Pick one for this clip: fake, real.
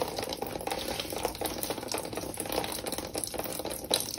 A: real